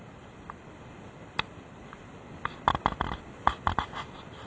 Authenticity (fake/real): real